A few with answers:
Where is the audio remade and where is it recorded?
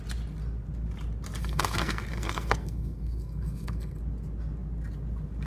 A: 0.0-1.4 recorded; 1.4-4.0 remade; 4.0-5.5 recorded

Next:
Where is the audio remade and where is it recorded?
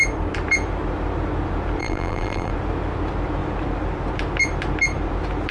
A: 0.0-1.8 recorded; 1.8-2.5 remade; 2.5-5.5 recorded